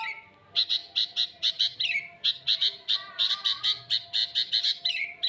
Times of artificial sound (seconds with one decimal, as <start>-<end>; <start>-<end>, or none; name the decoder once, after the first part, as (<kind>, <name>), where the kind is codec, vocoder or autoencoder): none